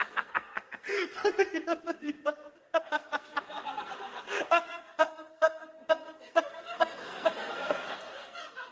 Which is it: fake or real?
fake